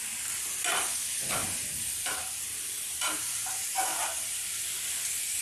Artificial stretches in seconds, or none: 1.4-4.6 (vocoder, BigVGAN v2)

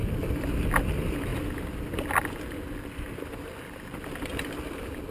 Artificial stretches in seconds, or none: none

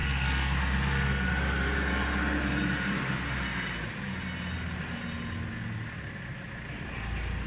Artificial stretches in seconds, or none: 0.0-1.3 (codec, SNAC)

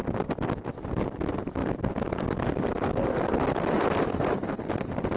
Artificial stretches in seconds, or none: none

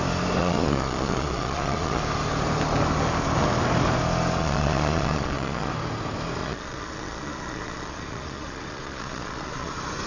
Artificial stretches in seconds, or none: 0.4-2.0 (vocoder, Vocos); 4.4-5.7; 6.4-9.7

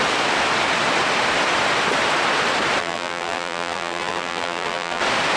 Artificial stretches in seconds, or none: 2.8-5.0 (vocoder, BigVGAN v2)

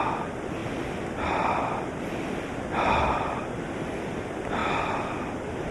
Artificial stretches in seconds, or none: none

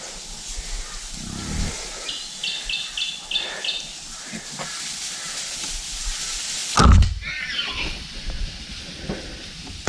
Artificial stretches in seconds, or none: none